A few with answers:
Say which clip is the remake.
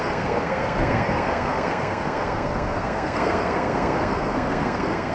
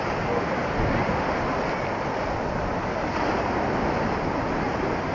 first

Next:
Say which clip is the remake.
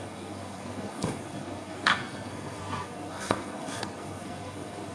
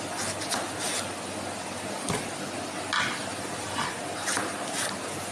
first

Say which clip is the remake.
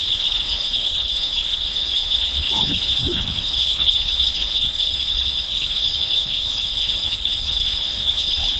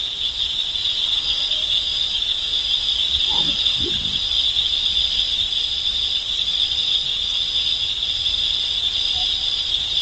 first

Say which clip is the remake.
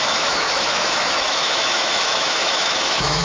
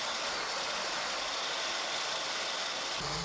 first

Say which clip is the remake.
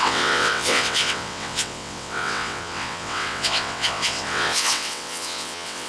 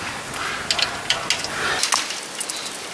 first